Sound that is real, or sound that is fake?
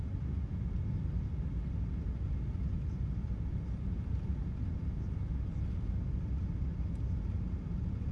real